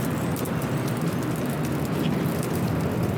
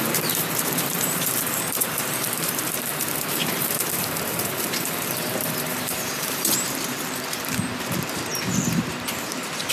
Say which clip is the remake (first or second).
second